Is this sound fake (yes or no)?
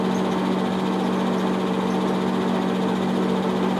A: no